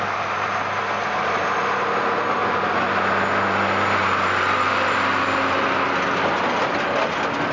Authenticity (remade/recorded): recorded